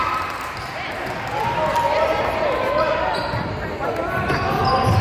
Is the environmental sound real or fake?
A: real